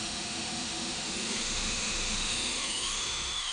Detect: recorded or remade remade